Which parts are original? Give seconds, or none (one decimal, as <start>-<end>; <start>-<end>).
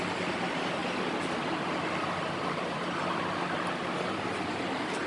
0.0-5.1